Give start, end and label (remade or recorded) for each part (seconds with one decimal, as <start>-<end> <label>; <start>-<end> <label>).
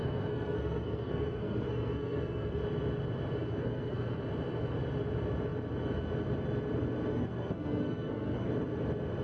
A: 0.0-2.6 remade; 2.6-3.5 recorded; 3.5-4.2 remade; 4.2-7.1 recorded; 7.1-8.5 remade; 8.5-9.2 recorded